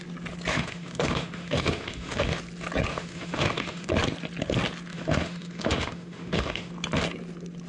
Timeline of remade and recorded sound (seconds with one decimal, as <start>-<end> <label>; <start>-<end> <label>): 0.0-0.5 recorded; 0.5-2.4 remade; 2.4-2.9 recorded; 2.9-3.9 remade; 3.9-4.9 recorded; 4.9-6.7 remade; 6.7-7.7 recorded